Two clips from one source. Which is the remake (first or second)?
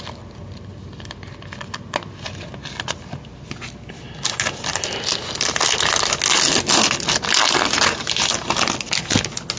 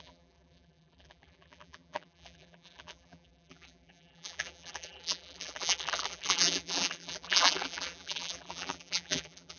second